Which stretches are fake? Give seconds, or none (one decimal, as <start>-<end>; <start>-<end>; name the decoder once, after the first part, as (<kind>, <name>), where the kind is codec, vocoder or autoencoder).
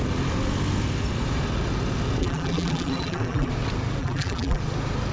2.2-3.5 (vocoder, BigVGAN v2); 4.0-4.6